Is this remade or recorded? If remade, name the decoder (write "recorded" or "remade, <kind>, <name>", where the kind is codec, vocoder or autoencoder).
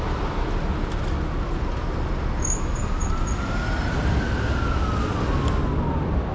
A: recorded